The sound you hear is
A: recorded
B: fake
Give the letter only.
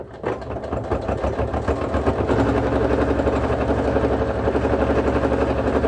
A